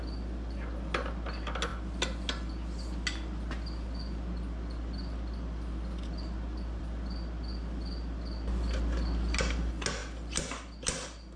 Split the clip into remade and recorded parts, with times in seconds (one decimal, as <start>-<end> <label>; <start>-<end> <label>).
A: 0.0-11.4 recorded